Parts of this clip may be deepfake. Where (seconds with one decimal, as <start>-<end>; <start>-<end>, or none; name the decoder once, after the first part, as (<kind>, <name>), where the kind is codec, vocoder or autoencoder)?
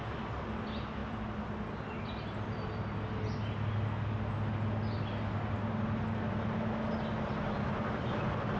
none